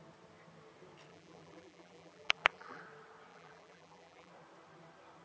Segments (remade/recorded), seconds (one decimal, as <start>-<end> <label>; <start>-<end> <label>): 0.0-1.1 recorded; 1.1-2.8 remade; 2.8-3.3 recorded; 3.3-4.3 remade; 4.3-5.2 recorded